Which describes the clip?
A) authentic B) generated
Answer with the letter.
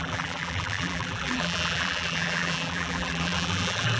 B